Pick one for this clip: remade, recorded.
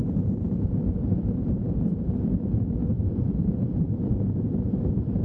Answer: remade